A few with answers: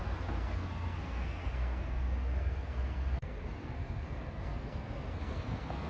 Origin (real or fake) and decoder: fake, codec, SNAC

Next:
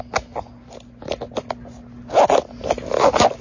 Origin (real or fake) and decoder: real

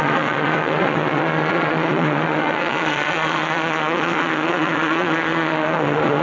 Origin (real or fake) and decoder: fake, vocoder, Vocos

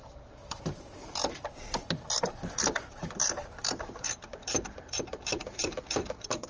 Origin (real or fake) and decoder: fake, vocoder, BigVGAN v2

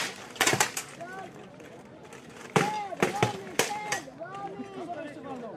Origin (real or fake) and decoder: real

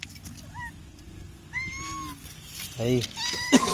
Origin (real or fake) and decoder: real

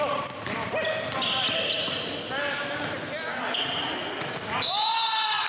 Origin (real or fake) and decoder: real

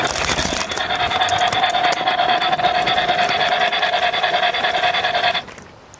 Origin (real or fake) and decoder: fake, vocoder, BigVGAN v2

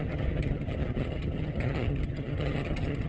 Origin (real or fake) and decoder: fake, vocoder, HiFi-GAN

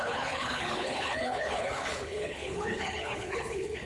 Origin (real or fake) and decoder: fake, codec, HILCodec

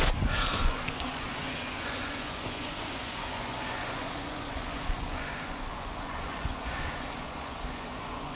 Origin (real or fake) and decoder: fake, vocoder, Vocos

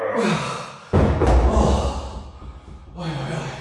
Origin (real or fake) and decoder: real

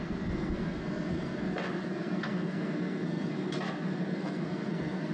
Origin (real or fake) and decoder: fake, codec, SNAC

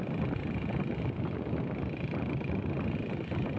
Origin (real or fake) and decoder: real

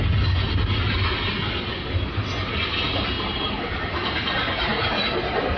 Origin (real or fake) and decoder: real